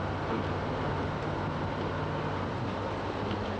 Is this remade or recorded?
recorded